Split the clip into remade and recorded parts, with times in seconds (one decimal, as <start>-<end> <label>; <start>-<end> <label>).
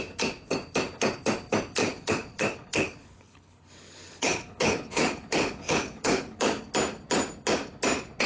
0.0-1.8 recorded; 1.8-6.7 remade; 6.7-8.3 recorded